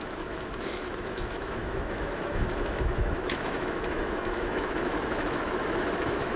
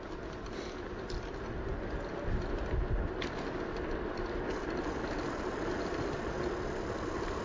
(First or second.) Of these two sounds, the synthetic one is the first